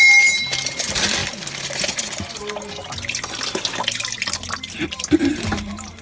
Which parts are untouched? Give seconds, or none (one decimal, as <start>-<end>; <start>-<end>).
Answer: 0.0-6.0

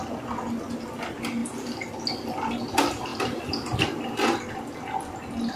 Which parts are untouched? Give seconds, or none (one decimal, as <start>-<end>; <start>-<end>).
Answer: 0.0-5.6